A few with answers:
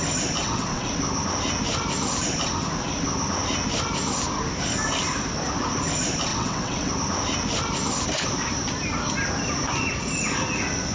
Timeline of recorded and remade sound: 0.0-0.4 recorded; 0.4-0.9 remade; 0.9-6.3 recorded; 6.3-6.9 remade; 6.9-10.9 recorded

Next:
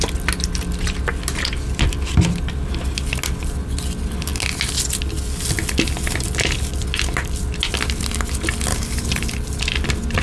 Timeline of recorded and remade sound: 0.0-8.7 recorded; 8.7-9.6 remade; 9.6-10.2 recorded

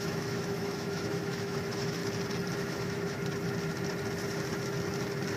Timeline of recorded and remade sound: 0.0-2.0 remade; 2.0-2.6 recorded; 2.6-3.2 remade; 3.2-5.4 recorded

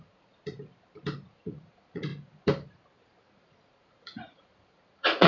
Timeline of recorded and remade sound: 0.0-0.4 remade; 0.4-1.3 recorded; 1.3-2.1 remade; 2.1-3.2 recorded; 3.2-5.3 remade